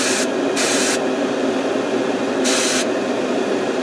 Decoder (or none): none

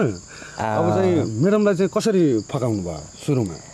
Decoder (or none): none